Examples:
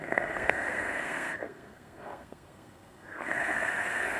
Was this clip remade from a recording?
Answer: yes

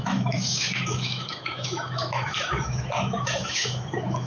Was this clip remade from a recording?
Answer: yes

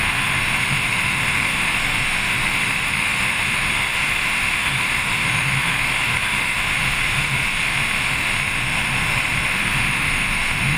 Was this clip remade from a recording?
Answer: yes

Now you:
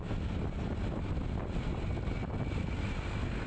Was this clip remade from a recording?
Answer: no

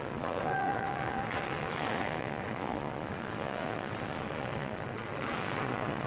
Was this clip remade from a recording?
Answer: yes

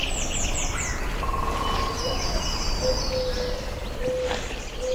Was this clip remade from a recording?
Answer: no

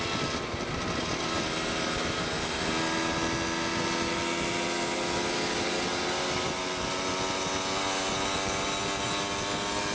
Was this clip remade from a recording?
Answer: no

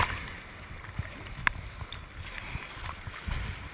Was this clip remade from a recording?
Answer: no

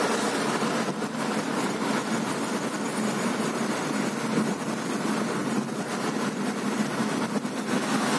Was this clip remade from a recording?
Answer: no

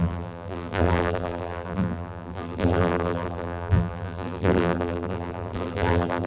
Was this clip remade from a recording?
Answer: yes